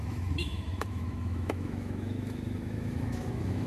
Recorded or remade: remade